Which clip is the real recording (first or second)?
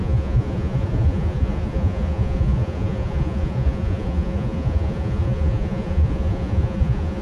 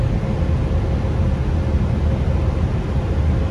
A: second